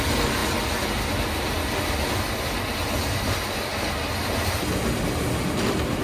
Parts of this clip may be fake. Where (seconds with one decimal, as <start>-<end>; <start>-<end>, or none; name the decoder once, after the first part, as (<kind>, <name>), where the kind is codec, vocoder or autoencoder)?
none